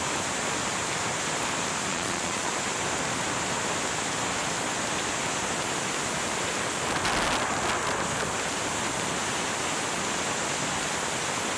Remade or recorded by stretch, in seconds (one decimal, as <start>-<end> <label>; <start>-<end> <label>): 0.0-1.9 recorded; 1.9-2.5 remade; 2.5-11.6 recorded